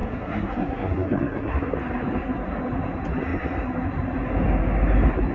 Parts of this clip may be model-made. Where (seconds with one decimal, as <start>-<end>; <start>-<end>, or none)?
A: 0.0-1.7